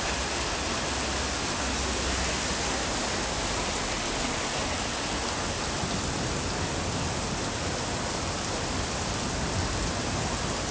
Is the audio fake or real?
real